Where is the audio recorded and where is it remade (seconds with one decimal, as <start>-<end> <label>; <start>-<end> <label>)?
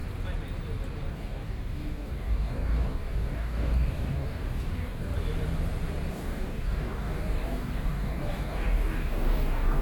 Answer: 0.0-1.1 recorded; 1.1-5.1 remade; 5.1-6.1 recorded; 6.1-9.8 remade